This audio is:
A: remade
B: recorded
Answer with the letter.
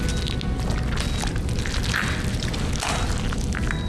B